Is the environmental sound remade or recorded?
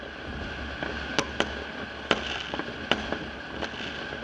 recorded